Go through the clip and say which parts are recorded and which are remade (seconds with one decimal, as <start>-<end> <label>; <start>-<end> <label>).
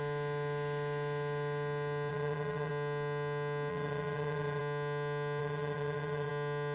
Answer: 0.0-2.1 recorded; 2.1-2.7 remade; 2.7-3.7 recorded; 3.7-4.6 remade; 4.6-5.4 recorded; 5.4-6.3 remade; 6.3-6.7 recorded